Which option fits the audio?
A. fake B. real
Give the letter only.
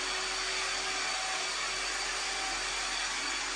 B